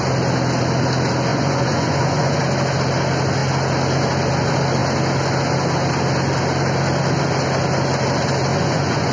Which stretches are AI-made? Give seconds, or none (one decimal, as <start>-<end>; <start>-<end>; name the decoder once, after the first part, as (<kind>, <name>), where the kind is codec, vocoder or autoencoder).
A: 1.3-2.4 (vocoder, Vocos); 8.5-9.1